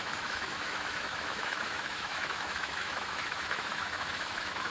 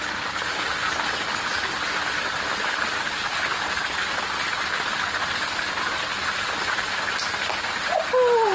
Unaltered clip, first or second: second